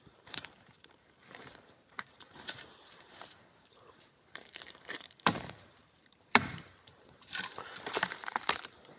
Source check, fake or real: fake